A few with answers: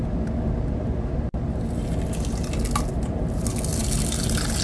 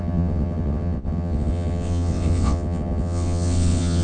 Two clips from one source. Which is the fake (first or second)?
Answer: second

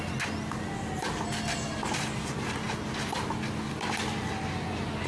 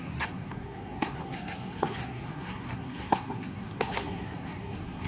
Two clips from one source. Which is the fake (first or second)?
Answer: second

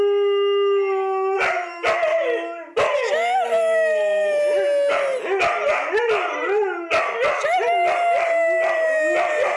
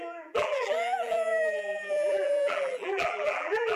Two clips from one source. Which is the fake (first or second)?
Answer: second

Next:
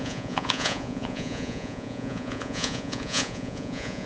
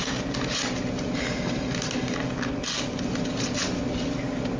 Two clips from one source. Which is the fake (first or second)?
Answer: first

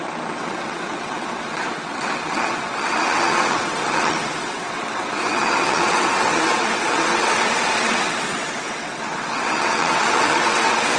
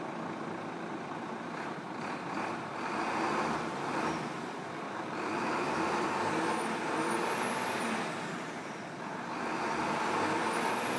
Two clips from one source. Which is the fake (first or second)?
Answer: first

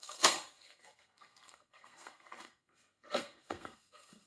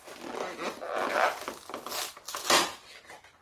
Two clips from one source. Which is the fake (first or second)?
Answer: first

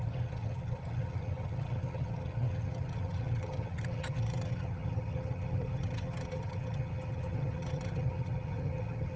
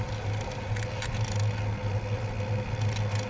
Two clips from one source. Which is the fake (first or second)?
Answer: first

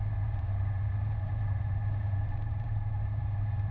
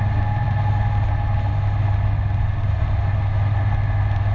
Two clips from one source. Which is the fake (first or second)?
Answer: first